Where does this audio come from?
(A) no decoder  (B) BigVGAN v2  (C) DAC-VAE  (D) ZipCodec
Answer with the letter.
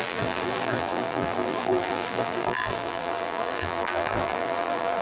B